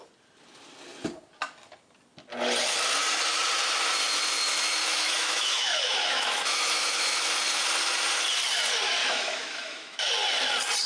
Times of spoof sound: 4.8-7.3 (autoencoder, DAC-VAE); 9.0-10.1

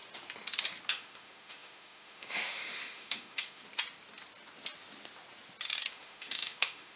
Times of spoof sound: 0.9-3.6 (autoencoder, DAC-VAE); 5.9-7.0

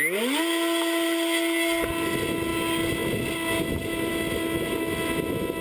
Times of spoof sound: none

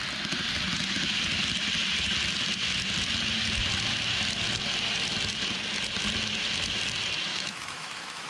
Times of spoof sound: 7.3-8.3 (autoencoder, DAC-VAE)